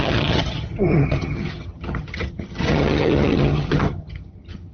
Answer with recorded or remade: remade